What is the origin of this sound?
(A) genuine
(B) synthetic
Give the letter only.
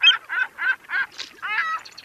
A